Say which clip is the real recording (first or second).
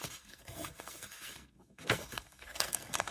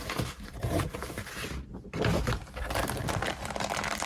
second